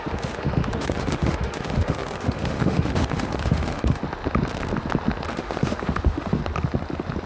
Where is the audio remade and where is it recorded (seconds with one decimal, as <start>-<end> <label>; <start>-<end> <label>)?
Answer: 0.0-4.0 remade; 4.0-5.3 recorded; 5.3-6.4 remade; 6.4-7.3 recorded